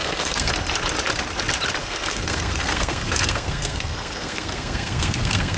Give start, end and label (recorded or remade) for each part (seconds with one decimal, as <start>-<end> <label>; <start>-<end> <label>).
0.0-0.5 remade; 0.5-1.8 recorded; 1.8-5.6 remade